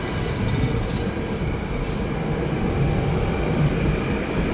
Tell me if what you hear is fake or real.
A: real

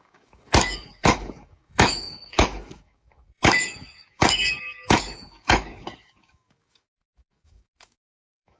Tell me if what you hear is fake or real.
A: fake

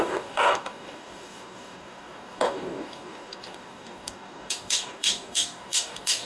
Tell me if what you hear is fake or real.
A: fake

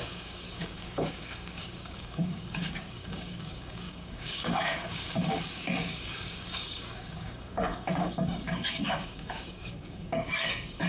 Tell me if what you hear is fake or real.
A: fake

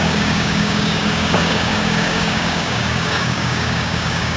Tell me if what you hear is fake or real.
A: fake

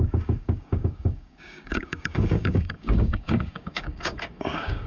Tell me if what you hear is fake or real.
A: fake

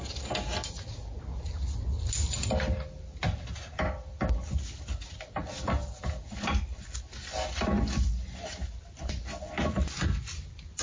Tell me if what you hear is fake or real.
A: real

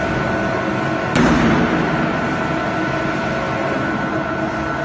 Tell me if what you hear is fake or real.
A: real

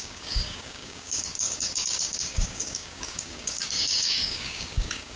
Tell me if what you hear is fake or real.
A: fake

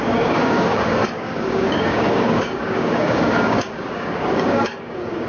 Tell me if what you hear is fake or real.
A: fake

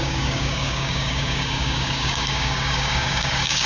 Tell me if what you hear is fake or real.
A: fake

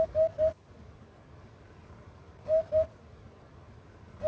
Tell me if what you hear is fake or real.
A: fake